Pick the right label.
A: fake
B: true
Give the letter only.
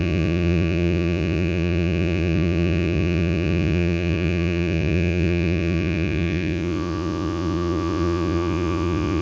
A